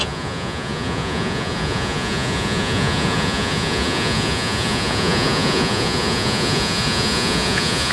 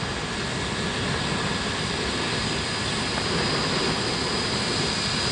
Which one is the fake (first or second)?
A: first